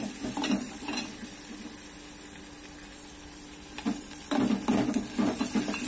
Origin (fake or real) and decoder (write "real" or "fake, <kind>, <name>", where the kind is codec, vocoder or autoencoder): real